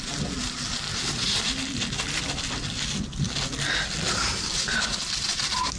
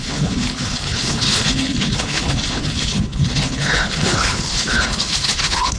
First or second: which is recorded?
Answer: first